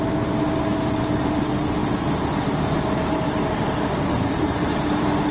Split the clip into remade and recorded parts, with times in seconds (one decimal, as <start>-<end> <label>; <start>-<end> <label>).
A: 0.0-5.3 recorded